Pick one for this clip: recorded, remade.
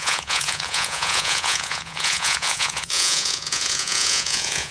remade